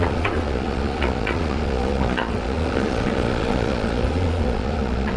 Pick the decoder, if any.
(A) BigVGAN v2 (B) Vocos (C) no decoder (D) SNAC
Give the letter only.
B